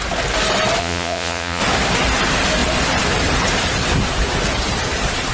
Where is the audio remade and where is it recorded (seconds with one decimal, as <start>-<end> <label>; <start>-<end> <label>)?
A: 0.0-0.8 recorded; 0.8-1.6 remade; 1.6-5.3 recorded